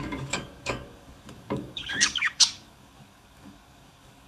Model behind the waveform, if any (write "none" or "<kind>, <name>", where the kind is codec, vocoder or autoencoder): codec, DAC